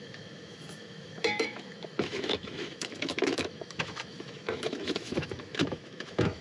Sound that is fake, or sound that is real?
fake